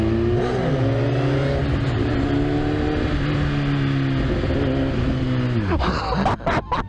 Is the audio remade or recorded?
recorded